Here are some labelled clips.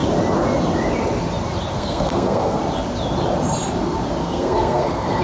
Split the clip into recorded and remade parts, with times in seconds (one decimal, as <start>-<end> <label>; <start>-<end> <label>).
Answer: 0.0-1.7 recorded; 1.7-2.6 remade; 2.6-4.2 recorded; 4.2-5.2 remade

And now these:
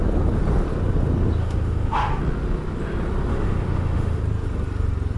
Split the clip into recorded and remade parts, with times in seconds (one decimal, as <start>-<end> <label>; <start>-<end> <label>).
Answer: 0.0-1.4 recorded; 1.4-2.2 remade; 2.2-3.3 recorded; 3.3-4.2 remade; 4.2-5.2 recorded

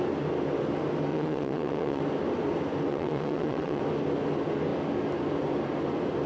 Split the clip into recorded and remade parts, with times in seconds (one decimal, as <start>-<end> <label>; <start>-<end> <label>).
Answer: 0.0-1.1 recorded; 1.1-2.0 remade; 2.0-2.9 recorded; 2.9-3.8 remade; 3.8-6.3 recorded